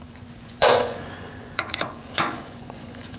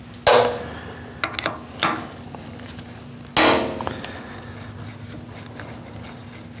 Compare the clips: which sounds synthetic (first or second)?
first